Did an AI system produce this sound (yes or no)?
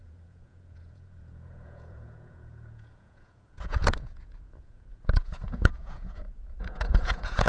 yes